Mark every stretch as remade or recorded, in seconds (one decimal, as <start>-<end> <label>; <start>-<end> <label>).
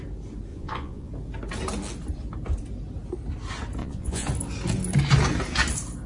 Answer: 0.0-0.5 recorded; 0.5-1.1 remade; 1.1-3.8 recorded; 3.8-4.3 remade; 4.3-6.1 recorded